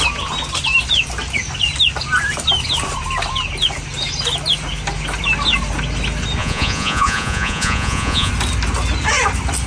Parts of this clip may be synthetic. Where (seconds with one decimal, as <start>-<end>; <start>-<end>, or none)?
6.4-8.3